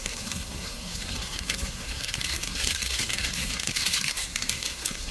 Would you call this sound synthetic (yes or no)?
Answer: yes